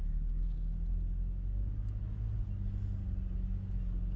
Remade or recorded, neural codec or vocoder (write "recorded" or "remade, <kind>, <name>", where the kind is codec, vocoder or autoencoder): recorded